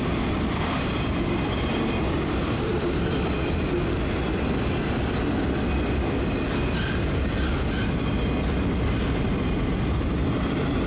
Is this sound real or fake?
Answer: real